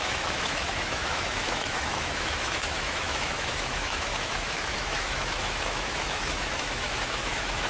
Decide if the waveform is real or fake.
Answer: fake